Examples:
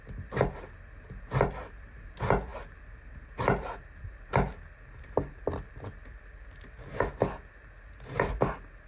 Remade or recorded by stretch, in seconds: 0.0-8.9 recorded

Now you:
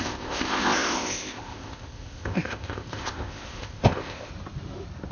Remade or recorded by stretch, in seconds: 0.0-4.3 remade; 4.3-5.1 recorded

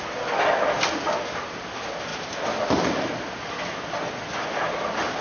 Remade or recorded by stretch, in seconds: 0.0-5.2 recorded

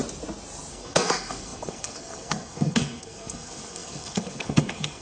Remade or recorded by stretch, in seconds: 0.0-0.7 recorded; 0.7-5.0 remade